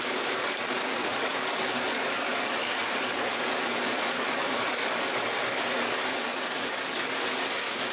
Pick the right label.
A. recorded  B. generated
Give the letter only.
B